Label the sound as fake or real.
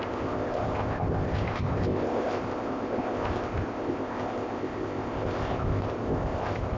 fake